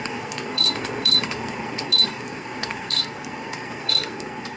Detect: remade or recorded remade